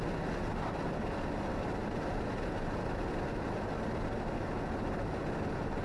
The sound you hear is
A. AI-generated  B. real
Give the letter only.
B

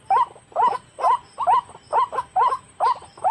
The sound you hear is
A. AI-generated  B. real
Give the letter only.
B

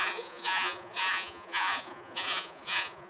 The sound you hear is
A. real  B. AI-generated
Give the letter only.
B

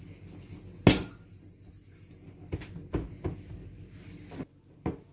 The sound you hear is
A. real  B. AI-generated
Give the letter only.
A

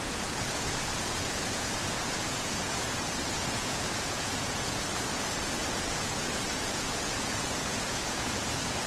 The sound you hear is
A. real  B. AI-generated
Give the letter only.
B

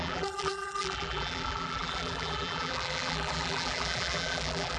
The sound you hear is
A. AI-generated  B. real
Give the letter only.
A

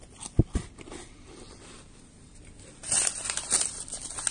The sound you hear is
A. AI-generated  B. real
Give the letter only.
B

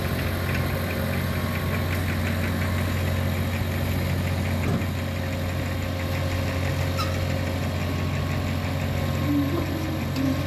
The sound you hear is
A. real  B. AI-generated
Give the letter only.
A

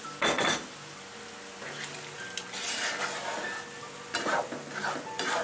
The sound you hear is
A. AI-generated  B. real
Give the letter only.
B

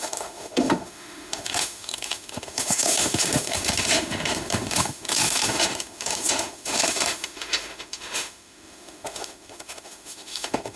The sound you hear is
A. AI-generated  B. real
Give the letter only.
A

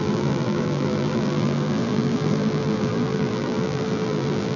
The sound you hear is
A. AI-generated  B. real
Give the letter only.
A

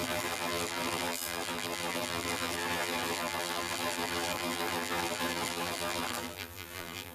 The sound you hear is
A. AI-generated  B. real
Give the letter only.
A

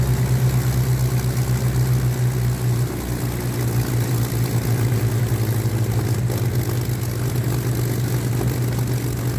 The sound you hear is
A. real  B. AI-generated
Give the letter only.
A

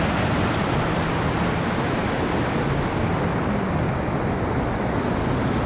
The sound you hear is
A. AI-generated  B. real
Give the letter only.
B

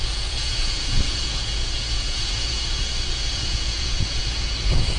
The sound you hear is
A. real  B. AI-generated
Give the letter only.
B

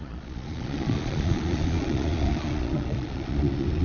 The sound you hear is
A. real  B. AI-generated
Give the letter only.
B